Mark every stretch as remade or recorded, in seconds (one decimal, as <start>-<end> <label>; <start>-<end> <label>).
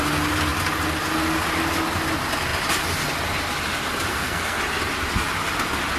0.0-4.1 recorded; 4.1-4.6 remade; 4.6-6.0 recorded